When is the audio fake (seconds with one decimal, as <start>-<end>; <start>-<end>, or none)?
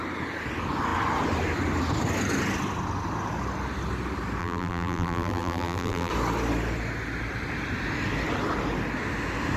4.4-6.1